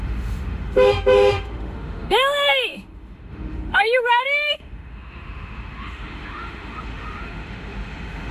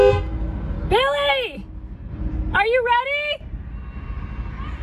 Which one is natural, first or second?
second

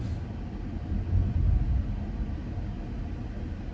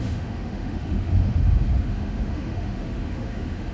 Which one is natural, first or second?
first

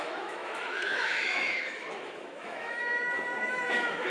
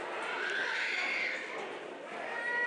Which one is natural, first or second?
second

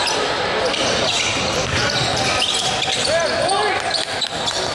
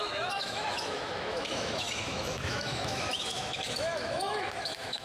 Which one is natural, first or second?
first